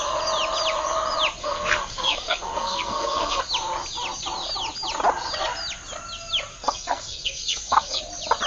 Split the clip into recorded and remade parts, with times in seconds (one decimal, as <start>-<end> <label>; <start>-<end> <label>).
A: 0.0-1.4 recorded; 1.4-3.4 remade; 3.4-6.5 recorded; 6.5-8.0 remade; 8.0-8.5 recorded